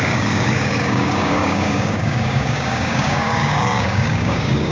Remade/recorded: remade